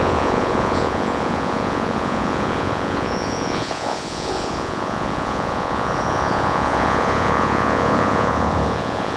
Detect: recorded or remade remade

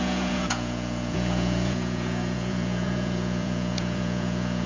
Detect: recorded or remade remade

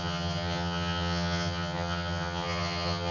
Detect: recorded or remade remade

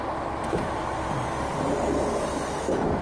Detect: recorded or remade recorded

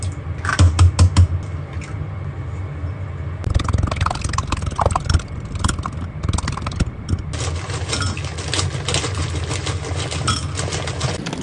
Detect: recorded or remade recorded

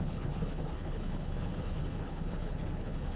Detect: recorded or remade remade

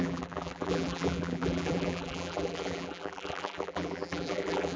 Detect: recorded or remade remade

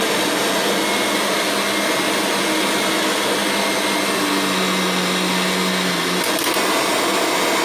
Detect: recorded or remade recorded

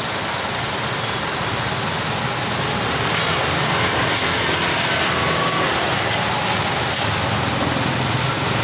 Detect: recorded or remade recorded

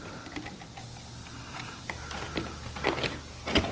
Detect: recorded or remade recorded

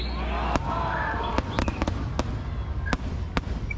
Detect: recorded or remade recorded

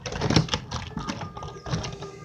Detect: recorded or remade recorded